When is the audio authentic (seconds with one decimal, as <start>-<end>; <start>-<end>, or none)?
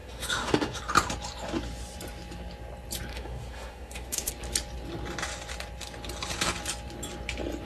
0.8-3.1; 4.3-7.7